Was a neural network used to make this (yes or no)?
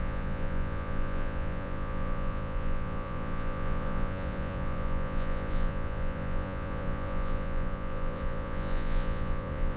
yes